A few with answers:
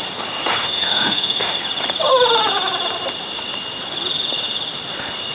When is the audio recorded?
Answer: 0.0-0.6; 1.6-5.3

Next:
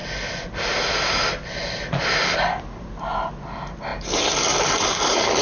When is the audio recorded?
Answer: 0.0-5.4